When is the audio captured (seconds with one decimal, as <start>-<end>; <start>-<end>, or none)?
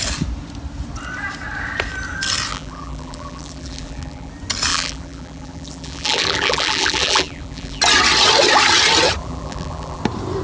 0.0-2.5; 4.3-4.7; 7.8-9.2; 10.0-10.4